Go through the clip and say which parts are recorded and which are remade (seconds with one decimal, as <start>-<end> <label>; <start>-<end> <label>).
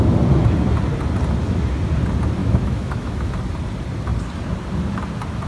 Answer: 0.0-2.4 recorded; 2.4-3.4 remade; 3.4-5.5 recorded